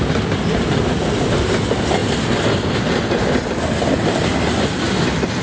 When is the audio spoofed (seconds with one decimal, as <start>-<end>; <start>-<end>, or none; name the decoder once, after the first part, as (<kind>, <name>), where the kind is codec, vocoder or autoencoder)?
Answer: none